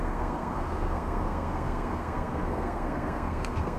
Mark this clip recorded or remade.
remade